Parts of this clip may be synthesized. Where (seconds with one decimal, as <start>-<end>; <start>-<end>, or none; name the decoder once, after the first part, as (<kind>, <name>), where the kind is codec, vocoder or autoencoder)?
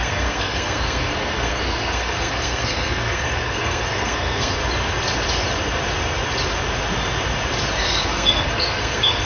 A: 0.0-4.6 (codec, SNAC); 7.8-9.2